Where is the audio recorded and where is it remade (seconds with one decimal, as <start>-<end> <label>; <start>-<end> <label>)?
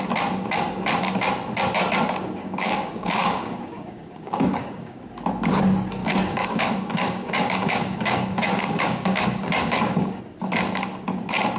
0.0-2.4 recorded; 2.4-5.0 remade; 5.0-6.0 recorded; 6.0-10.2 remade; 10.2-11.6 recorded